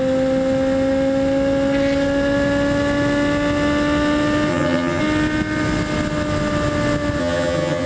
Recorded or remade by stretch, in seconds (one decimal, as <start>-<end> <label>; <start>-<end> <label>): 0.0-4.5 recorded; 4.5-5.0 remade; 5.0-7.2 recorded; 7.2-7.9 remade